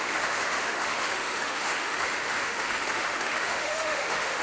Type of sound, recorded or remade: remade